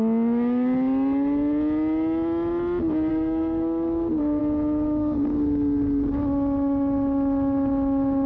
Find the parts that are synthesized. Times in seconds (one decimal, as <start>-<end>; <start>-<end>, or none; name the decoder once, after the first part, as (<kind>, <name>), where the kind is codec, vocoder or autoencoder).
3.1-4.4 (codec, SNAC)